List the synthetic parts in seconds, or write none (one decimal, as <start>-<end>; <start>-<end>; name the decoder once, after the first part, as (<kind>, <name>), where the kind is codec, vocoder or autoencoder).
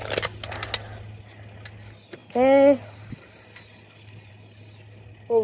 none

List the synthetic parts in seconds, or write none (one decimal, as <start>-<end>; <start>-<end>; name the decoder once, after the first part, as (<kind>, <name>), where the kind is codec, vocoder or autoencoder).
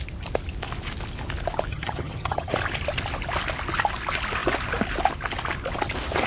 1.7-2.5 (vocoder, HiFi-GAN)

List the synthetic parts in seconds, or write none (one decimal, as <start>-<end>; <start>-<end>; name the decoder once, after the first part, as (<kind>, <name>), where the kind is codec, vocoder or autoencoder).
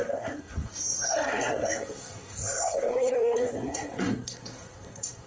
0.0-5.3 (codec, SNAC)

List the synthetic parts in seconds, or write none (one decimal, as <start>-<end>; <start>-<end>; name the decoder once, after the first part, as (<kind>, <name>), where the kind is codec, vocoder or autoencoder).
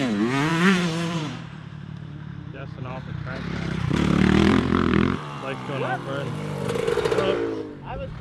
0.5-5.4 (vocoder, BigVGAN v2); 6.0-6.9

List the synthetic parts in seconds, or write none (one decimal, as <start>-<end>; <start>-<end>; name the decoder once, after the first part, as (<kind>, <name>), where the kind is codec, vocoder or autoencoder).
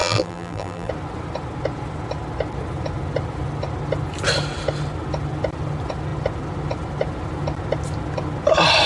0.0-0.9 (vocoder, BigVGAN v2)